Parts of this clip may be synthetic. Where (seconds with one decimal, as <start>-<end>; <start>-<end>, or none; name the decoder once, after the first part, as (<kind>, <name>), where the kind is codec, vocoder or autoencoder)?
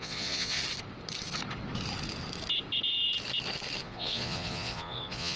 0.0-0.6 (vocoder, Vocos); 3.8-5.4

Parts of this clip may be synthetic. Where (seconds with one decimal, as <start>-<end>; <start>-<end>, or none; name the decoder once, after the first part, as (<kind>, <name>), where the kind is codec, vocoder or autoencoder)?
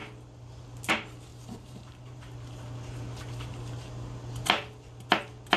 1.3-2.2 (vocoder, BigVGAN v2)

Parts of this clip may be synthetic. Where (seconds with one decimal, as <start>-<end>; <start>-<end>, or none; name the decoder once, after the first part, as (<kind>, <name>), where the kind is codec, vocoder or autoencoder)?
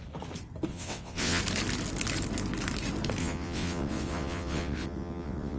0.7-1.4 (vocoder, WaveNeXt); 3.2-5.6